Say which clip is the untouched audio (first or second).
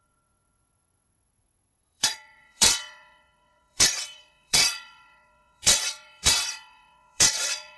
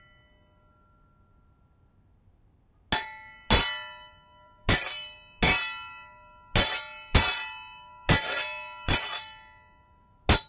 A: second